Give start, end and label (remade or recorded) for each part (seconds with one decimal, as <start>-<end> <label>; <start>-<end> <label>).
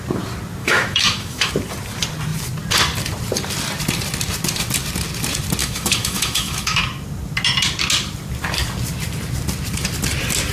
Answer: 0.0-0.6 recorded; 0.6-1.5 remade; 1.5-5.6 recorded; 5.6-6.8 remade; 6.8-10.5 recorded